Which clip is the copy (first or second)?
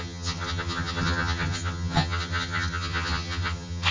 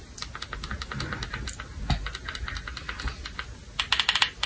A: first